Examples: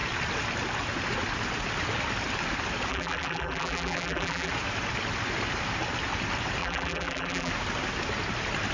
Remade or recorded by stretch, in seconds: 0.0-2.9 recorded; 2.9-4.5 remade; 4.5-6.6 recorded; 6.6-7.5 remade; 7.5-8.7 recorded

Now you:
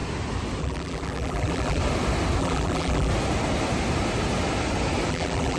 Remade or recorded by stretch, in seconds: 0.0-0.6 recorded; 0.6-1.8 remade; 1.8-2.4 recorded; 2.4-3.1 remade; 3.1-5.1 recorded; 5.1-5.6 remade